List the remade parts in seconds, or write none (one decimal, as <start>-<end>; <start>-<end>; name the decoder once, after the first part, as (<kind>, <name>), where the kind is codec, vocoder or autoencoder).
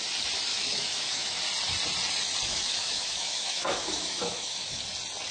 0.5-1.4 (autoencoder, DAC-VAE); 2.5-4.8